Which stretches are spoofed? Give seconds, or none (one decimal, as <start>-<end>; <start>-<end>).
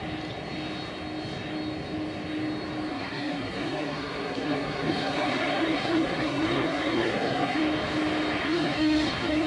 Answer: 2.9-7.6; 8.4-9.5